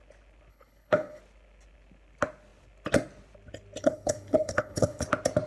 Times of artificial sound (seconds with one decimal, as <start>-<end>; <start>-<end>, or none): 0.5-1.2; 3.8-5.0